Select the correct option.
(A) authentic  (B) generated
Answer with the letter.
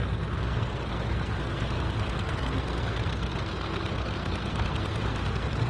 B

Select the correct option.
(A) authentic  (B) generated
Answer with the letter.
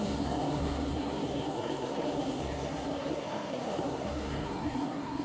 B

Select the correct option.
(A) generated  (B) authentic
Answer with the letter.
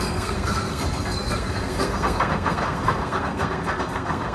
A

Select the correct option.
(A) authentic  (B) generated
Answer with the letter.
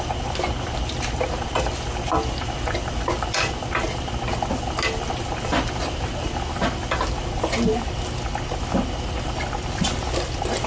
A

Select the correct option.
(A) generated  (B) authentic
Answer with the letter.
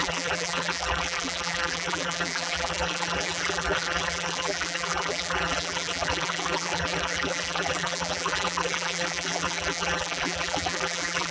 A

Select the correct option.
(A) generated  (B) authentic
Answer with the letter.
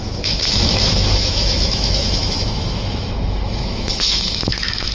A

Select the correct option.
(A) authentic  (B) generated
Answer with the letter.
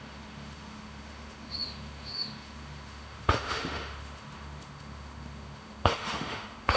B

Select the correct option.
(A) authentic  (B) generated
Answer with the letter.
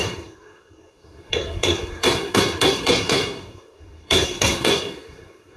B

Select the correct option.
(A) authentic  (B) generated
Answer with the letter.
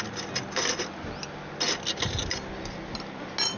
A